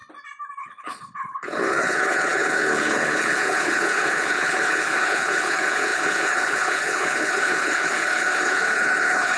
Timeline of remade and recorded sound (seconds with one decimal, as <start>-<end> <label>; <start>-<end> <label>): 0.0-0.6 recorded; 0.6-9.4 remade